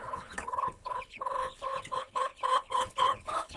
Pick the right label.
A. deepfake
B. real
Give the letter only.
A